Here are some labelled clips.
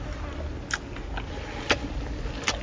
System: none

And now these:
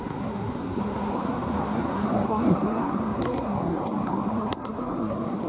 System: codec, SNAC